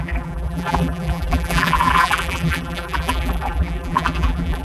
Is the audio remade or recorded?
remade